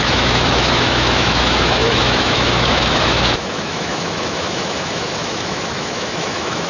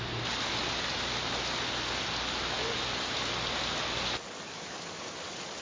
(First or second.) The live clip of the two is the second